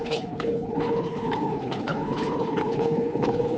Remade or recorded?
remade